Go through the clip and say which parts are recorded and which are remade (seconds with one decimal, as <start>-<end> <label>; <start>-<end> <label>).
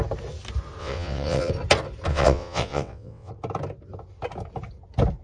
0.0-0.8 recorded; 0.8-1.5 remade; 1.5-2.1 recorded; 2.1-3.3 remade; 3.3-5.2 recorded